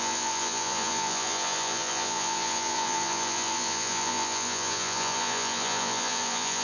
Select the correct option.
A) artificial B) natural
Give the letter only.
A